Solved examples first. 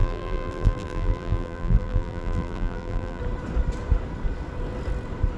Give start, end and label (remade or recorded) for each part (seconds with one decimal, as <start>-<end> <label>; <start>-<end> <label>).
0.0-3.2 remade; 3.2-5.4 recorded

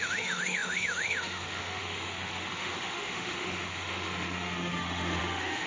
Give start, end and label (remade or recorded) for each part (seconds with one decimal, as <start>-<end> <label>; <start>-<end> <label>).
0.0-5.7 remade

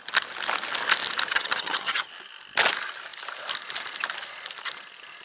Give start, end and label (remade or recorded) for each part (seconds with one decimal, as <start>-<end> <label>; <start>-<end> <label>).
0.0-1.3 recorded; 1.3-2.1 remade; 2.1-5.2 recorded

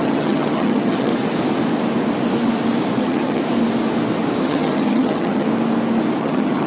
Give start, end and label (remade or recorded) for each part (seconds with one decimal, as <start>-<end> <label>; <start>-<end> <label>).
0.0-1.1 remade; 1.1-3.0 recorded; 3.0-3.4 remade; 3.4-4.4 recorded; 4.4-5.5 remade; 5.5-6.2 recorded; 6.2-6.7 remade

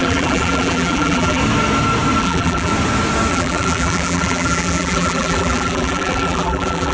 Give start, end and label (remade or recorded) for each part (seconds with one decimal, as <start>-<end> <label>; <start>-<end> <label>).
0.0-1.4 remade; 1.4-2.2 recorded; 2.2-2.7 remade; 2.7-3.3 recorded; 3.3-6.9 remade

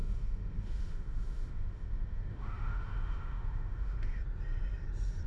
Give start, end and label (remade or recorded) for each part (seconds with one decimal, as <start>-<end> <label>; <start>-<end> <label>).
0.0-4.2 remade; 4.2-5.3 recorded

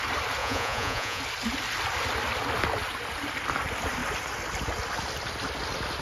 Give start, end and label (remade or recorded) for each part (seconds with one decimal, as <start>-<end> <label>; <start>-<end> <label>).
0.0-0.4 recorded; 0.4-1.2 remade; 1.2-6.0 recorded